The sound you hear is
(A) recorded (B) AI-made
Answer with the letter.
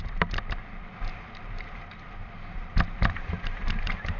B